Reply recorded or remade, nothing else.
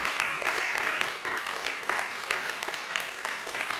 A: remade